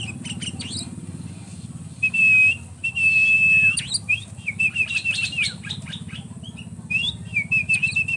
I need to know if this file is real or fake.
real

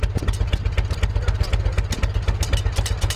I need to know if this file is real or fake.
real